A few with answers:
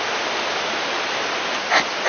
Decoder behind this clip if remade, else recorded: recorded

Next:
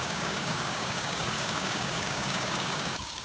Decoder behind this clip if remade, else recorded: remade, codec, DAC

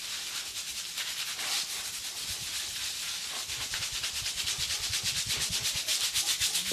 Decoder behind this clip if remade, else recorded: recorded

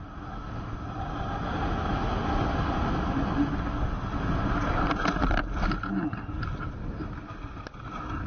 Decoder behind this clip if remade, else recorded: recorded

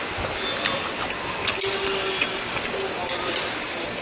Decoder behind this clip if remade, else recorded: recorded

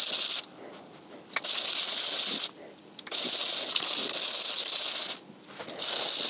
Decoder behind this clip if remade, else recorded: recorded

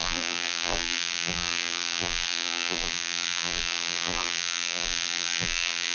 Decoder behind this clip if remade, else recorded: remade, vocoder, BigVGAN v2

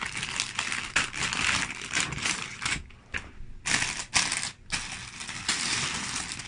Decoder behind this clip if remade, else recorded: recorded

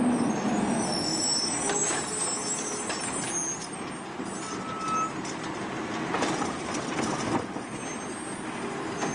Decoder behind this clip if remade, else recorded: recorded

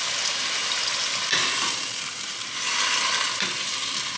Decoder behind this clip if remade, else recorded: recorded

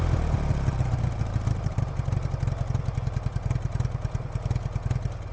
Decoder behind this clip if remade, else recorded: recorded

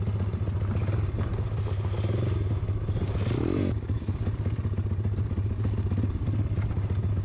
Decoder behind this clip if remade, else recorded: recorded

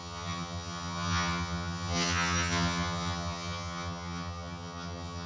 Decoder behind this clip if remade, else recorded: remade, vocoder, HiFi-GAN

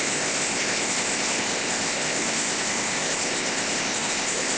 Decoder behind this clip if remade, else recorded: remade, codec, ZipCodec